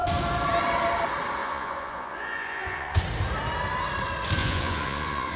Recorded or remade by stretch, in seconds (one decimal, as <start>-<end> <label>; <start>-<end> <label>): 0.0-1.4 recorded; 1.4-3.0 remade; 3.0-4.4 recorded; 4.4-5.4 remade